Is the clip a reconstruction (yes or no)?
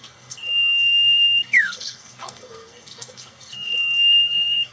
yes